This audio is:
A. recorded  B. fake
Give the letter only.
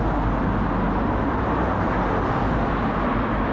A